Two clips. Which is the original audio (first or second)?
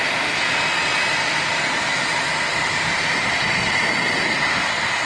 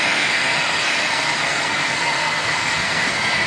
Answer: first